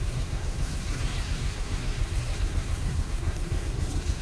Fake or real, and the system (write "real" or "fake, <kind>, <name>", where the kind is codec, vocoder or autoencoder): fake, codec, SNAC